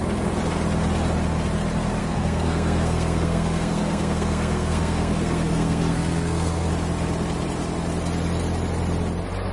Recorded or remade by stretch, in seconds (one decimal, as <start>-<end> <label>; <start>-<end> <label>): 0.0-2.0 recorded; 2.0-6.7 remade; 6.7-9.5 recorded